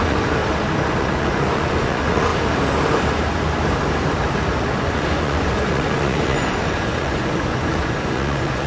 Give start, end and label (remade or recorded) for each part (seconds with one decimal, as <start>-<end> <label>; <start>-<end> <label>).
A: 0.0-0.4 remade; 0.4-1.0 recorded; 1.0-2.3 remade; 2.3-4.8 recorded; 4.8-8.7 remade